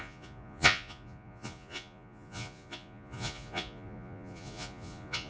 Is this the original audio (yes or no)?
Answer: no